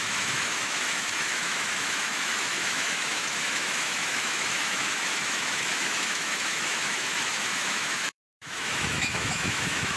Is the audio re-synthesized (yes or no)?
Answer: yes